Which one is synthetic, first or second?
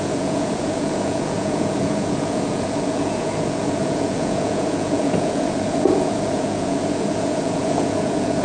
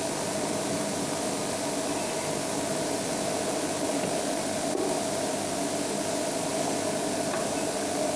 first